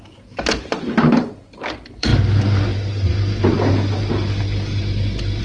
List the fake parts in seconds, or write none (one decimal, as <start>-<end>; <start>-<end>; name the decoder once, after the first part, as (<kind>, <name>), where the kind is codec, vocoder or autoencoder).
0.0-2.1 (vocoder, BigVGAN v2)